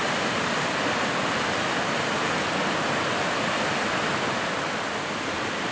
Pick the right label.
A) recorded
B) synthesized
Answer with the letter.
A